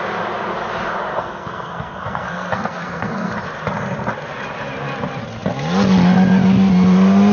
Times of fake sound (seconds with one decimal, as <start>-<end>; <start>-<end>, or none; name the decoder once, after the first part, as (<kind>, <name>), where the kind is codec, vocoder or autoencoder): 1.1-3.3 (codec, SNAC)